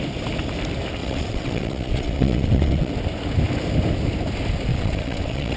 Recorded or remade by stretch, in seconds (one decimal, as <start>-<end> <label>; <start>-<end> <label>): 0.0-1.0 recorded; 1.0-2.9 remade; 2.9-4.7 recorded; 4.7-5.6 remade